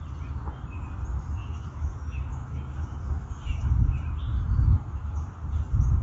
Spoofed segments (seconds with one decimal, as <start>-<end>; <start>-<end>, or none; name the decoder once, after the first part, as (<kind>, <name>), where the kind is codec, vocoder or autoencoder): 1.4-3.7 (autoencoder, DAC-VAE)